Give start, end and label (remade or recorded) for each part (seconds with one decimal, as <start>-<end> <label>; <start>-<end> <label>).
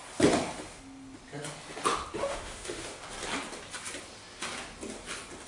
0.0-2.2 recorded; 2.2-3.0 remade; 3.0-5.5 recorded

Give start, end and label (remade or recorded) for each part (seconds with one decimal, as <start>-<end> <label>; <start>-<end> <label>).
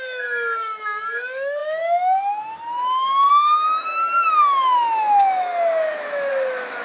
0.0-6.8 remade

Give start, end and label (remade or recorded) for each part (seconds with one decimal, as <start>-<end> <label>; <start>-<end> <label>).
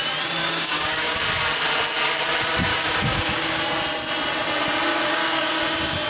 0.0-0.4 recorded; 0.4-1.2 remade; 1.2-2.7 recorded; 2.7-3.6 remade; 3.6-4.9 recorded; 4.9-5.5 remade; 5.5-6.1 recorded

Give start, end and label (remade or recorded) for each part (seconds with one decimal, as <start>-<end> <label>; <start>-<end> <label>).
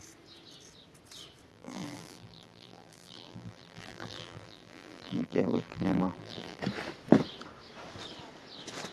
0.0-1.5 recorded; 1.5-6.6 remade; 6.6-8.9 recorded